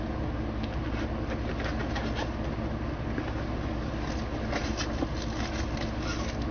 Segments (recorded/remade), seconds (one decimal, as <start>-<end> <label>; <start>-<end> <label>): 0.0-6.5 recorded